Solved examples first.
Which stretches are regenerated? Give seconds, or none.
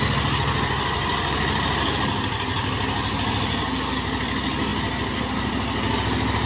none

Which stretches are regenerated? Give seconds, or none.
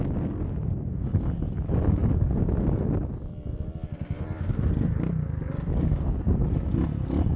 none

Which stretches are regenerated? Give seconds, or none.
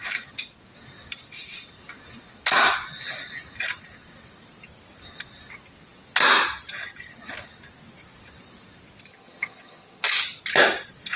9.1-10.2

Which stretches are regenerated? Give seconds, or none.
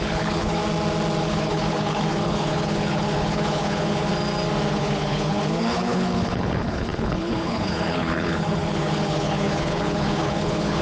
0.0-0.6; 1.2-4.1; 4.7-10.8